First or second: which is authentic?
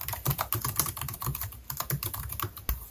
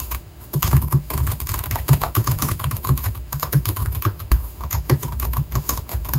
first